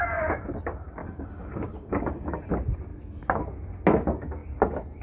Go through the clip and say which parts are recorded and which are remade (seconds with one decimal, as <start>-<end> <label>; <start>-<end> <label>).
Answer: 0.0-1.0 recorded; 1.0-2.5 remade; 2.5-5.0 recorded